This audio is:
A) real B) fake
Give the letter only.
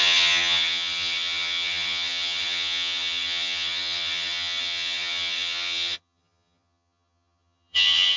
B